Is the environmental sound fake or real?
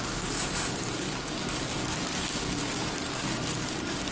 fake